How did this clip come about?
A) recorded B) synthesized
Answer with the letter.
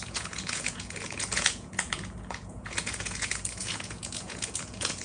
B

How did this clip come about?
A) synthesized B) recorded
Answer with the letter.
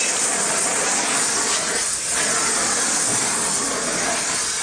B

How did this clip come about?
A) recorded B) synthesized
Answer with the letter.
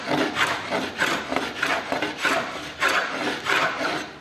A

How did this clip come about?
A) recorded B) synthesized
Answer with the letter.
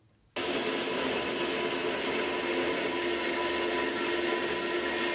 A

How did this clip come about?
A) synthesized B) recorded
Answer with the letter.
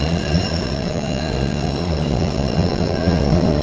A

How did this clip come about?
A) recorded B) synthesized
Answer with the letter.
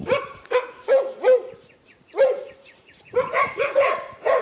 B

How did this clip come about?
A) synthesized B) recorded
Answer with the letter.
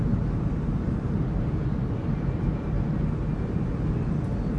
B